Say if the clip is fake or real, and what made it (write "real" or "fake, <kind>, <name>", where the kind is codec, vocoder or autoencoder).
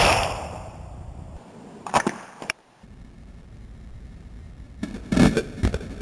fake, vocoder, BigVGAN v2